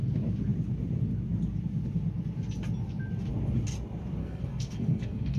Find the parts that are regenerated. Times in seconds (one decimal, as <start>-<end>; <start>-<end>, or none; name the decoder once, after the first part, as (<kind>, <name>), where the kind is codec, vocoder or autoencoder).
4.2-5.4 (codec, SNAC)